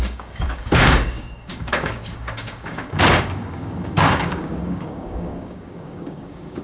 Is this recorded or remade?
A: remade